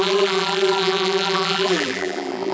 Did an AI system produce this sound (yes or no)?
yes